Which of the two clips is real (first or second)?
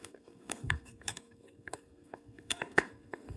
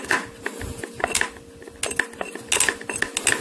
second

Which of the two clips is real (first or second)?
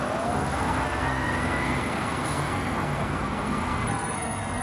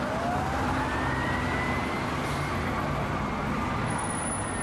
second